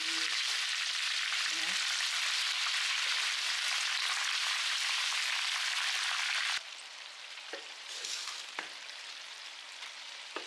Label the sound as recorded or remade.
remade